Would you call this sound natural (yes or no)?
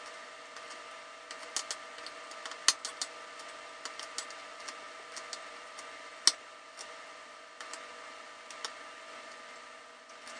yes